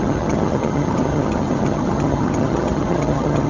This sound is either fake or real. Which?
fake